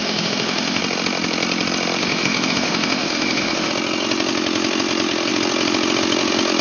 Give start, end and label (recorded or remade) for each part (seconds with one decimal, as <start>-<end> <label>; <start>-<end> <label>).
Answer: 0.0-0.8 remade; 0.8-2.0 recorded; 2.0-3.7 remade; 3.7-6.6 recorded